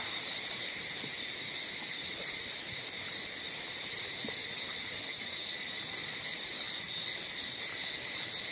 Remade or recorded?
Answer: recorded